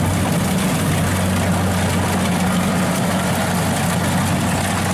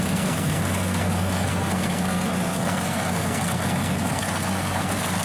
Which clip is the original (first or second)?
first